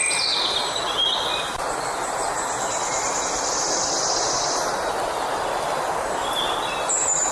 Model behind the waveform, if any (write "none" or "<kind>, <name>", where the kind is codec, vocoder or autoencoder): none